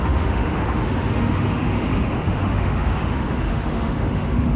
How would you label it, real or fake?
fake